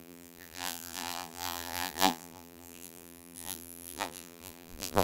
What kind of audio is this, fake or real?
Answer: fake